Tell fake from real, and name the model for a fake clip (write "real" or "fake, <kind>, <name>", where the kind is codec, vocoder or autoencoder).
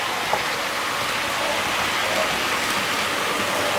real